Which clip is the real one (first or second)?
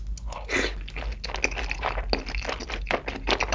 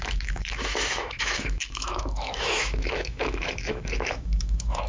first